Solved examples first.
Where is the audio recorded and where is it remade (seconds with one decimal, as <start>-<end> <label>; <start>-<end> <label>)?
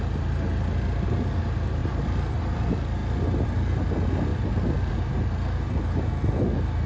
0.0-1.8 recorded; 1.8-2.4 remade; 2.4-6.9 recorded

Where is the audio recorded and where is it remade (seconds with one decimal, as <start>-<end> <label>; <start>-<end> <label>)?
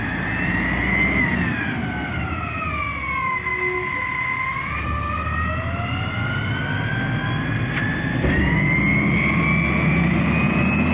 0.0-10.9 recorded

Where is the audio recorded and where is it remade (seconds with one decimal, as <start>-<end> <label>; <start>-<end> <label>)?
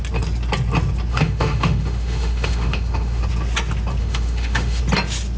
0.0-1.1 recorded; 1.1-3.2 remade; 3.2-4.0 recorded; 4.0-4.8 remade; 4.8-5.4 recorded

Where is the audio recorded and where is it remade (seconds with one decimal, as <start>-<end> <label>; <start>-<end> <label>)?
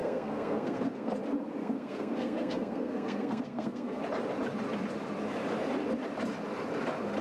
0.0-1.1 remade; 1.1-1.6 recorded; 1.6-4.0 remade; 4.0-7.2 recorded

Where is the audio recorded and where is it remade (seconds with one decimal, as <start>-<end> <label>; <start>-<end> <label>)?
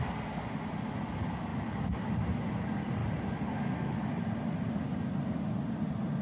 0.0-1.5 recorded; 1.5-2.3 remade; 2.3-3.0 recorded; 3.0-4.8 remade; 4.8-6.2 recorded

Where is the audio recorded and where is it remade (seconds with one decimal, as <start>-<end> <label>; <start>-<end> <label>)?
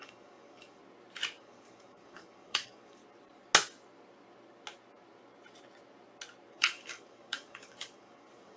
0.0-0.8 remade; 0.8-1.4 recorded; 1.4-3.0 remade; 3.0-6.5 recorded; 6.5-8.6 remade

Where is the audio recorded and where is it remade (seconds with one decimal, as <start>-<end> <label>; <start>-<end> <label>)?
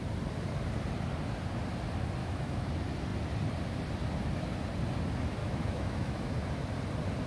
0.0-2.2 recorded; 2.2-2.7 remade; 2.7-5.4 recorded; 5.4-6.3 remade; 6.3-7.3 recorded